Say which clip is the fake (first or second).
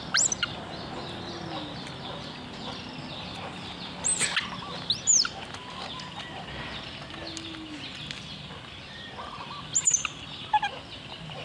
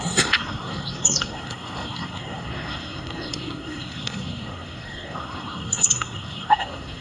second